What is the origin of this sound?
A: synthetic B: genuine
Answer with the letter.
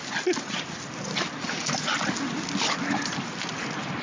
B